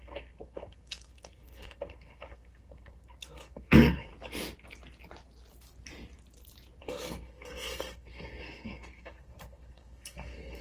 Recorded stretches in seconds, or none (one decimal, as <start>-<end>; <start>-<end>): 4.1-6.8